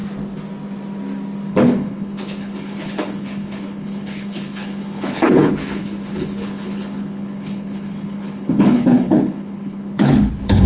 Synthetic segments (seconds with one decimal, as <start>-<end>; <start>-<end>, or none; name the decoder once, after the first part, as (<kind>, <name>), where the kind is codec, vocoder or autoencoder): 1.5-10.7 (codec, HILCodec)